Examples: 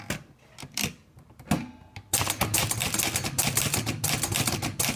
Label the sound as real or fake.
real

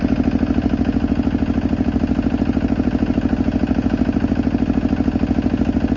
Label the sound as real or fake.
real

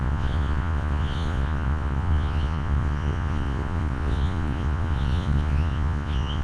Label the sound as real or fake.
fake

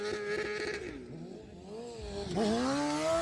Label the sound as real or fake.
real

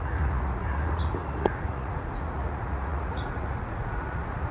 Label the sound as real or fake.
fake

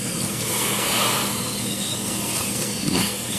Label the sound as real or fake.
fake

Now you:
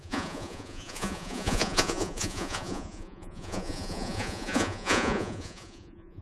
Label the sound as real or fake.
fake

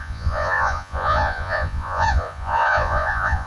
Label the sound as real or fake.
fake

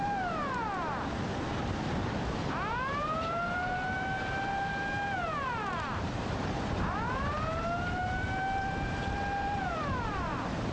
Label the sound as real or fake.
fake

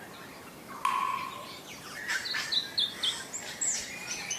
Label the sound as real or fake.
real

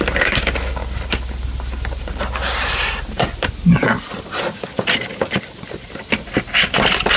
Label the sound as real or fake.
real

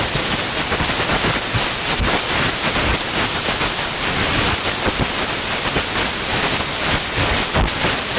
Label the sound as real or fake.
real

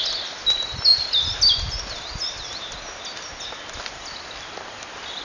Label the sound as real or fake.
real